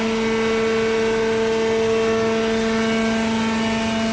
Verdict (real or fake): real